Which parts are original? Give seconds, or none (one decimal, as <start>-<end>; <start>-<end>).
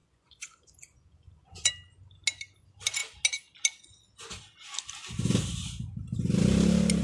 1.7-7.0